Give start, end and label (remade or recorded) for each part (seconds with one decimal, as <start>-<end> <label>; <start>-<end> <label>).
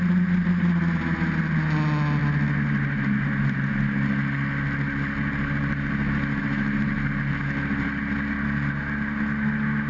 0.0-9.9 recorded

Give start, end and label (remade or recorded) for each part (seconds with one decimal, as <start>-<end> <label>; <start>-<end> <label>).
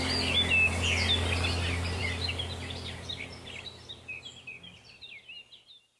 0.0-6.0 recorded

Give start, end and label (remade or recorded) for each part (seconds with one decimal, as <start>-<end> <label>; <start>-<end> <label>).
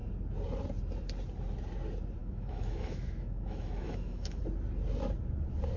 0.0-2.2 recorded; 2.2-4.4 remade; 4.4-5.8 recorded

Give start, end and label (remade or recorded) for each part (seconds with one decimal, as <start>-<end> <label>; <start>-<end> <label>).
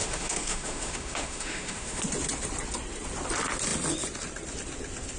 0.0-2.0 remade; 2.0-5.2 recorded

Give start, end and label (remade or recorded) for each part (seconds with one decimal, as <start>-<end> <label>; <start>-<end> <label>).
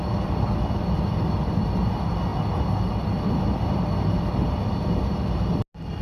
0.0-6.0 recorded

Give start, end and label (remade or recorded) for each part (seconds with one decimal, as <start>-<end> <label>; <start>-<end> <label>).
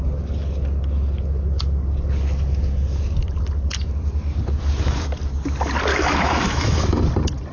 0.0-5.9 recorded; 5.9-7.0 remade; 7.0-7.5 recorded